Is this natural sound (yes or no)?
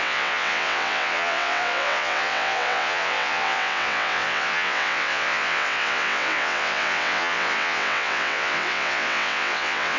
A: no